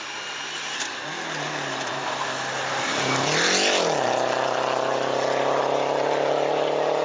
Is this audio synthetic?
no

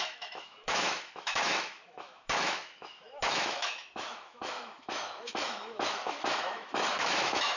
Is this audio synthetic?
yes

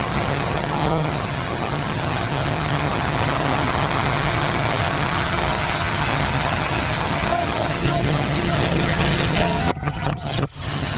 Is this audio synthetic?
yes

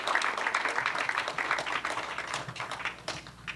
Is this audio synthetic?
no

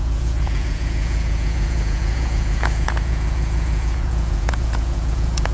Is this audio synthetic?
yes